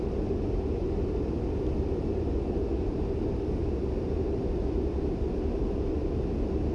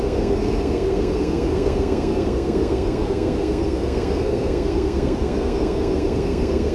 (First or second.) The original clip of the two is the first